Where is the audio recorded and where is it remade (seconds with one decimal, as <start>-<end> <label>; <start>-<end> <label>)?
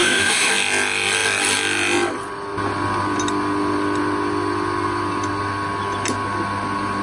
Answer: 0.0-0.5 remade; 0.5-7.0 recorded